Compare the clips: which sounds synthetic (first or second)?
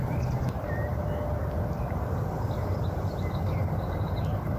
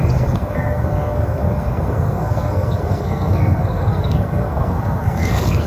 second